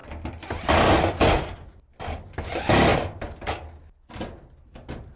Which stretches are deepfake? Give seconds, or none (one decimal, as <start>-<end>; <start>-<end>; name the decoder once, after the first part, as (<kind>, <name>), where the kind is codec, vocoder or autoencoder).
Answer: none

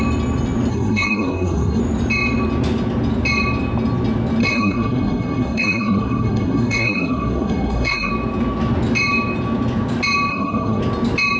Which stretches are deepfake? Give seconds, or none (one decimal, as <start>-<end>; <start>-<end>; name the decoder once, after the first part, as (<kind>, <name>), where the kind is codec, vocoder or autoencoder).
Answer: 0.7-1.8 (codec, SNAC); 4.4-8.1; 10.3-10.8

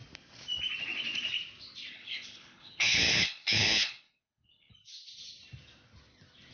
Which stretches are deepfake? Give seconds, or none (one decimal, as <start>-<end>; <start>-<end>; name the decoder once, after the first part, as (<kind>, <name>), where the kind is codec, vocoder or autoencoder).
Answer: 1.9-4.7 (codec, HILCodec)

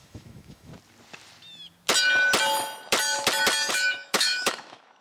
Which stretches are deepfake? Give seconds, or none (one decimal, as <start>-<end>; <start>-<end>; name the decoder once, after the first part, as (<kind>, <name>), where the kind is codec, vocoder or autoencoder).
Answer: 0.0-0.7 (autoencoder, DAC-VAE); 3.7-5.0